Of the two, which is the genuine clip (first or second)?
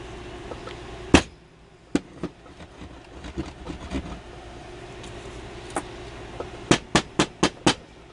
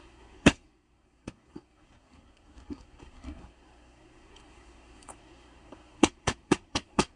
first